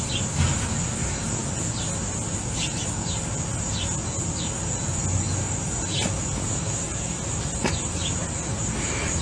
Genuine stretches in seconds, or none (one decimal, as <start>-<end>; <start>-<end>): 0.0-9.2